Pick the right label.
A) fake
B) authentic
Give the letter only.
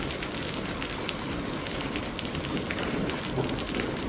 B